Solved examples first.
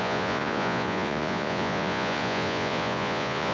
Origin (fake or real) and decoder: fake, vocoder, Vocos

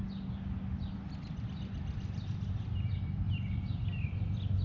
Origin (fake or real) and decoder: real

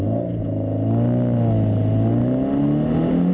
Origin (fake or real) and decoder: real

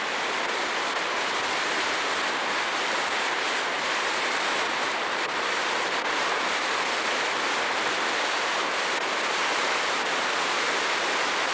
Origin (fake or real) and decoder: real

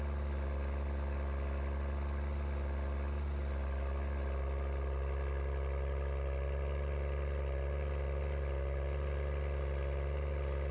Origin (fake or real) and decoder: real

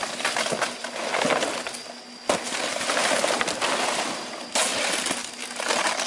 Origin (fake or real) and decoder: real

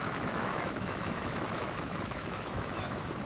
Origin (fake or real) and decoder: fake, autoencoder, DAC-VAE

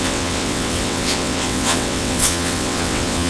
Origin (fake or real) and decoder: fake, vocoder, WaveNeXt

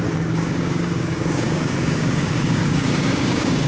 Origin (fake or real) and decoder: fake, codec, DAC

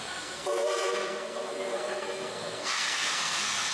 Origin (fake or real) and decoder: fake, codec, SNAC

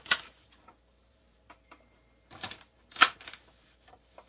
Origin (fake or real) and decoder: fake, vocoder, BigVGAN v2